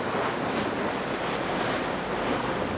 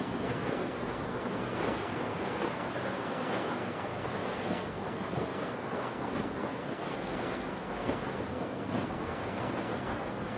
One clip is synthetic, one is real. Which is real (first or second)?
first